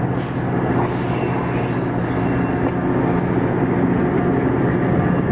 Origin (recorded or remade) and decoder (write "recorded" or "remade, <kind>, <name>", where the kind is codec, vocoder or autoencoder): recorded